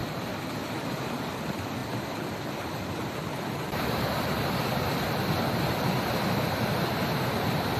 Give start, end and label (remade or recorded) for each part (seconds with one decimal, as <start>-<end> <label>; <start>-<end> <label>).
0.0-7.8 recorded